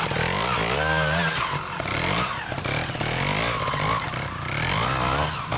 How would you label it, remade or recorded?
recorded